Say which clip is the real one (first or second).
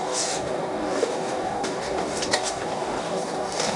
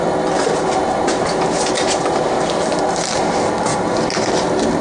second